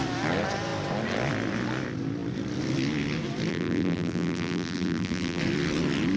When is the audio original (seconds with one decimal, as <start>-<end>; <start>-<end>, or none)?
0.0-3.5; 5.4-6.2